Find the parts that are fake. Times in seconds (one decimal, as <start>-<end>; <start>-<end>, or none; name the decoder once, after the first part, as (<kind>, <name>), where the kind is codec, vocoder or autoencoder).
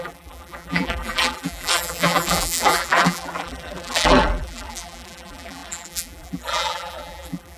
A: 0.0-7.6 (vocoder, BigVGAN v2)